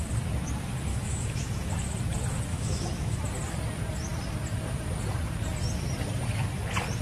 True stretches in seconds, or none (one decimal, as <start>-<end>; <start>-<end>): 0.0-0.9; 1.7-2.5; 3.2-7.0